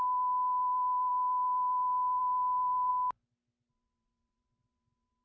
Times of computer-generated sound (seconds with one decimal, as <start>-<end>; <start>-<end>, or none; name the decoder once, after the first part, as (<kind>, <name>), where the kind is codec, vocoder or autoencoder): 0.0-2.9 (vocoder, BigVGAN v2); 3.7-5.2